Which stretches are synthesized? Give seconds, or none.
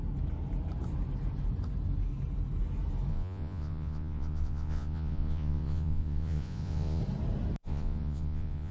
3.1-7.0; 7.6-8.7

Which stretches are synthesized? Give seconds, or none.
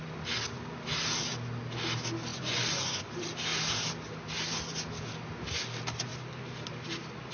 2.3-3.0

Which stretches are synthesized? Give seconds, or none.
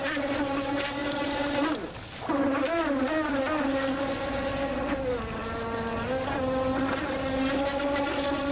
none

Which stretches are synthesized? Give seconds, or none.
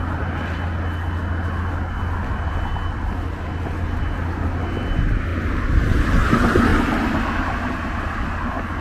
none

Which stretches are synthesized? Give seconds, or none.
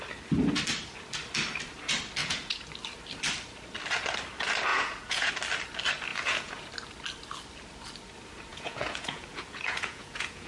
2.2-2.7; 4.7-5.3; 6.1-6.7; 8.5-10.5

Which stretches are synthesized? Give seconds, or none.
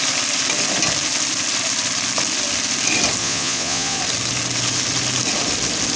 3.2-4.0